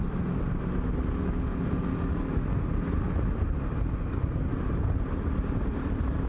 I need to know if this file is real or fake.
real